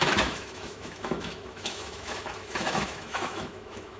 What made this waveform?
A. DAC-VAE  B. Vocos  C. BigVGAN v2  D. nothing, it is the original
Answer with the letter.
A